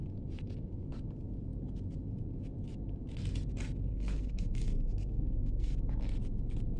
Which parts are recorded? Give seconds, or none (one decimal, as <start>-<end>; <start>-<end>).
0.0-3.9; 5.8-6.8